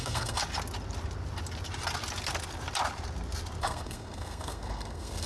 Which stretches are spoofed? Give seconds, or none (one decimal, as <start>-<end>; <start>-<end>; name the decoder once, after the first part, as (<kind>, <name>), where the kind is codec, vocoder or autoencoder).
0.0-0.4 (codec, SNAC); 3.6-5.3